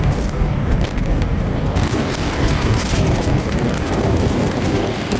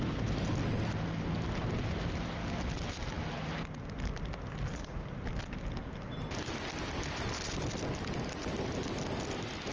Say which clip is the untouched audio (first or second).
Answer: second